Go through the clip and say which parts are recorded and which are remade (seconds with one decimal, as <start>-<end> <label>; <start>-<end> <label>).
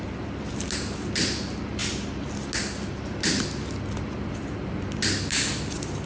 0.0-6.1 recorded